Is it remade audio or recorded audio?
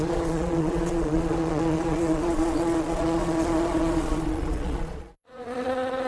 remade